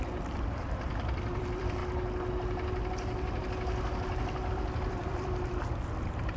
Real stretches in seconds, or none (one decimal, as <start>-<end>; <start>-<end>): 1.8-4.5